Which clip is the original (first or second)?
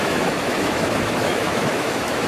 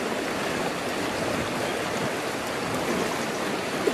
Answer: second